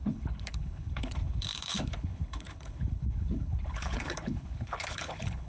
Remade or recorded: remade